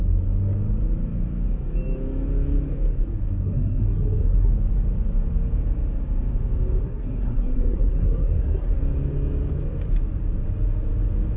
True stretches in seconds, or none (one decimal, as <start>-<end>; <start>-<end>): 0.0-3.4; 4.5-6.8; 8.8-11.4